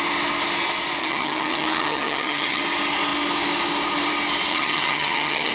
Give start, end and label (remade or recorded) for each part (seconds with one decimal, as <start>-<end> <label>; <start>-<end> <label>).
0.0-1.0 recorded; 1.0-2.6 remade; 2.6-4.5 recorded; 4.5-5.5 remade